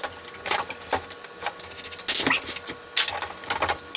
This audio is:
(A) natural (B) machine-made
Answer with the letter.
A